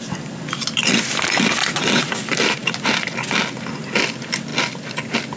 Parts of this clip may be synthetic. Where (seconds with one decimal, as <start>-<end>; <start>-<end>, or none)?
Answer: 1.6-2.1